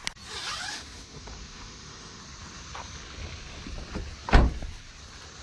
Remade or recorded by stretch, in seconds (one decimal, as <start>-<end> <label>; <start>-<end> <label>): 0.0-0.7 recorded; 0.7-2.2 remade; 2.2-5.4 recorded